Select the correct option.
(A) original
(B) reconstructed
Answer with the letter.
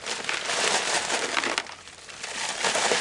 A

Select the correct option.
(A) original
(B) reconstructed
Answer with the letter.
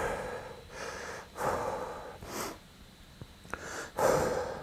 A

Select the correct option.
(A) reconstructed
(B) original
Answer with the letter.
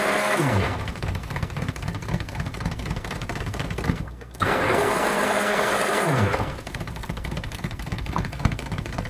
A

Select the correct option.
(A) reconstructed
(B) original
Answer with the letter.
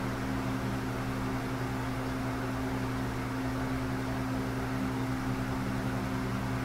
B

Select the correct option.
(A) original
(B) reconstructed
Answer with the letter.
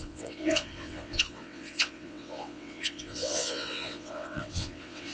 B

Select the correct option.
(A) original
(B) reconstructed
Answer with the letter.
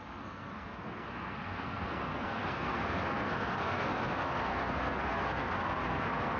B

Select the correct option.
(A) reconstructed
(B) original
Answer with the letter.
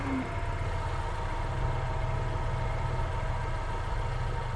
B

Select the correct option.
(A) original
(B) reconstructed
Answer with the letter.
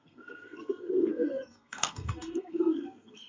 B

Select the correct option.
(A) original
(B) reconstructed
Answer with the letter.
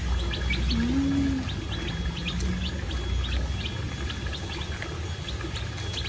A